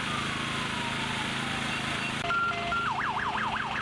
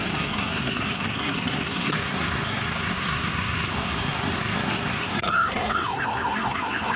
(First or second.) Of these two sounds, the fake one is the second